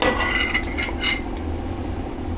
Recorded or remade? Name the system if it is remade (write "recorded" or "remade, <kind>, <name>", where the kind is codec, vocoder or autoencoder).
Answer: recorded